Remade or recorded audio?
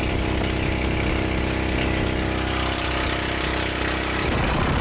recorded